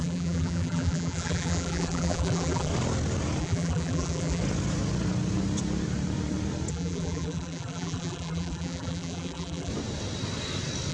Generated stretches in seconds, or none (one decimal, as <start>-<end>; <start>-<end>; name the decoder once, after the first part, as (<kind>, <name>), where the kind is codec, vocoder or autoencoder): 0.0-2.7 (vocoder, BigVGAN v2); 3.4-4.4; 6.7-9.7